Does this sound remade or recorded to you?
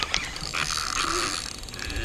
recorded